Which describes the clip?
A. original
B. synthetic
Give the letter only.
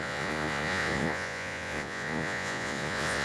B